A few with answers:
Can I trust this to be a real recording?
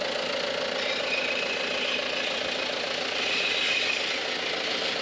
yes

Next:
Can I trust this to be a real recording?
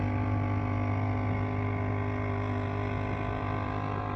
yes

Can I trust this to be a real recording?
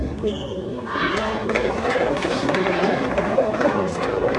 no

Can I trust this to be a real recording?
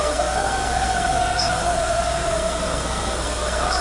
no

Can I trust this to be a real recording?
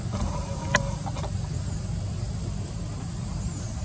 yes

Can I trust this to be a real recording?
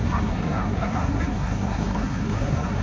no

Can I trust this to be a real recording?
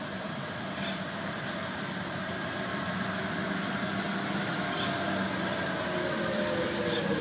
yes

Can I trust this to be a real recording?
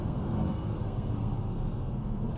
no